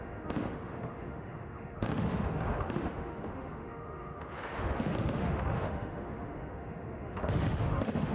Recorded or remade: remade